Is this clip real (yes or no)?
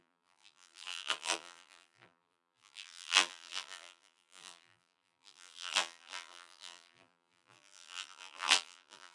no